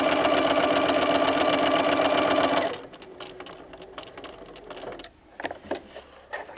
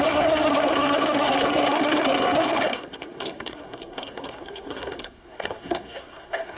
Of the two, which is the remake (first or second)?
second